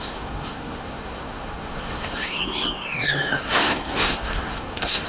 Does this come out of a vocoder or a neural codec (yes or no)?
yes